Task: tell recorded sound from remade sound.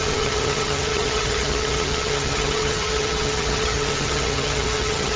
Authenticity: remade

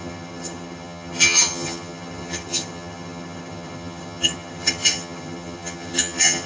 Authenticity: remade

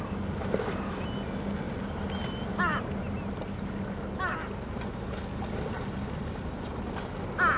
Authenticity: recorded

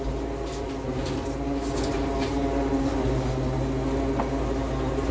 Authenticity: recorded